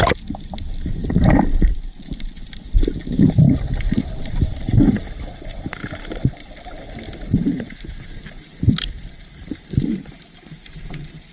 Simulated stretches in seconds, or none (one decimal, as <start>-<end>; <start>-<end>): 1.0-4.7; 7.3-11.3